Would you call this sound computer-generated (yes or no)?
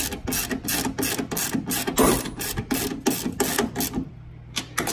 no